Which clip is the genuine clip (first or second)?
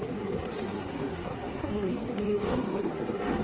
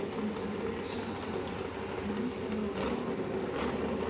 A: second